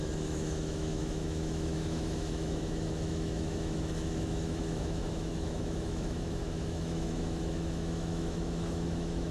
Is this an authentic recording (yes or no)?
no